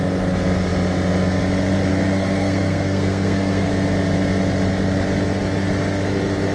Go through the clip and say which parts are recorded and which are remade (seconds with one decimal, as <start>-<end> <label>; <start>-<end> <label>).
0.0-1.9 recorded; 1.9-3.7 remade; 3.7-6.5 recorded